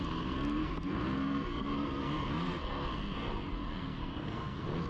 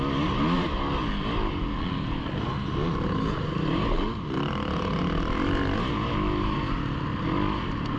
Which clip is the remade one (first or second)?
first